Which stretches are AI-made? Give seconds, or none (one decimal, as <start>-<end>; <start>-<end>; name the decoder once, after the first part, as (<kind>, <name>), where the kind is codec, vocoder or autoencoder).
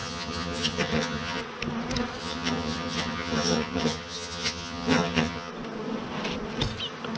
0.0-1.4 (vocoder, HiFi-GAN); 2.2-5.5